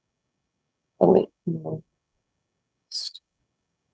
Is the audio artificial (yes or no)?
yes